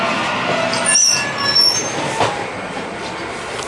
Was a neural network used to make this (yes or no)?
no